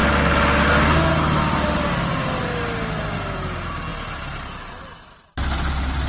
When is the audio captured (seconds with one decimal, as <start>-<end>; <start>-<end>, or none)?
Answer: 0.0-6.1